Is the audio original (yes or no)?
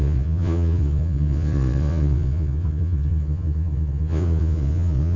no